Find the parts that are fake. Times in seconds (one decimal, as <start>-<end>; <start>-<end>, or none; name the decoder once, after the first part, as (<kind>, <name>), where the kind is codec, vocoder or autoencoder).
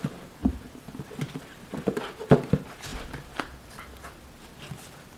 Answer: 0.4-2.0 (vocoder, BigVGAN v2)